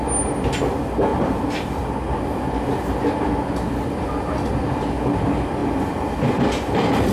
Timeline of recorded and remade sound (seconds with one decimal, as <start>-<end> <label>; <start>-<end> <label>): 0.0-1.1 recorded; 1.1-1.8 remade; 1.8-5.6 recorded; 5.6-7.1 remade